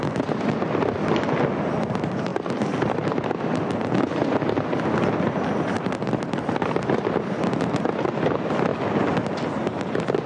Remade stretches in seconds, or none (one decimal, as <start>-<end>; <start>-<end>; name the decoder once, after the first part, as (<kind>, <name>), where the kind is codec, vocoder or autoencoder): none